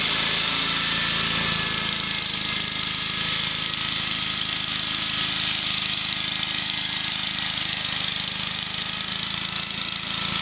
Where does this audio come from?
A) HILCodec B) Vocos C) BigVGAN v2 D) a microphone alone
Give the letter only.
D